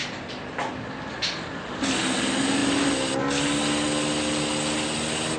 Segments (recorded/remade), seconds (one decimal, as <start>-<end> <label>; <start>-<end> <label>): 0.0-5.4 recorded